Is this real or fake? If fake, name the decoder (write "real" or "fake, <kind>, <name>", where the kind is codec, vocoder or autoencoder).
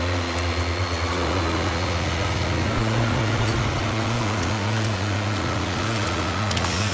fake, vocoder, Vocos